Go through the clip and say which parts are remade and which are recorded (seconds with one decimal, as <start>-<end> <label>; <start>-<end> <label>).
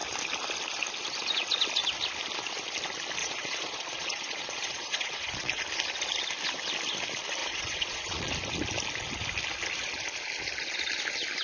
0.0-3.2 recorded; 3.2-5.6 remade; 5.6-7.4 recorded; 7.4-8.3 remade; 8.3-11.4 recorded